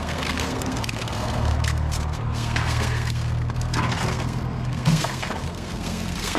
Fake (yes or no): yes